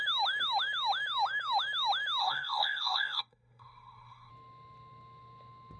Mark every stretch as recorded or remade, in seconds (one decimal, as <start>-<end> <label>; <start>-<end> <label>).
0.0-2.2 recorded; 2.2-4.3 remade; 4.3-5.8 recorded